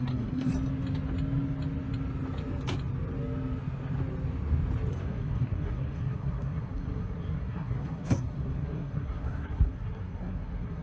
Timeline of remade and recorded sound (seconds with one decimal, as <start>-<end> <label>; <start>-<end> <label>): 0.0-0.5 remade; 0.5-4.9 recorded; 4.9-10.8 remade